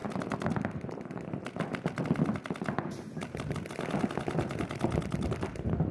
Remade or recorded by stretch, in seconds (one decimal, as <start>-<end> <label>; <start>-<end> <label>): 0.0-5.9 recorded